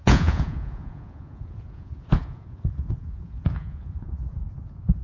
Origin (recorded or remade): remade